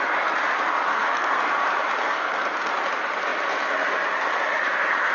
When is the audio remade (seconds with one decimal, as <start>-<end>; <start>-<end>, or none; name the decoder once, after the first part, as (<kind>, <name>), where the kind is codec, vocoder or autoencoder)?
0.9-1.4 (codec, SNAC); 2.0-2.7